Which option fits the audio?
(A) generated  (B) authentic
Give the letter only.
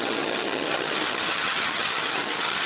A